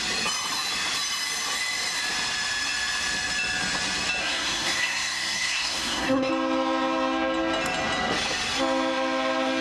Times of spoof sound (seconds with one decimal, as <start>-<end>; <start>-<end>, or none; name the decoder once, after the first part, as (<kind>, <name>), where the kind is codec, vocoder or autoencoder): 4.2-6.3 (codec, SNAC)